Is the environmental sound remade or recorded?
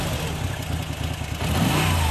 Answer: recorded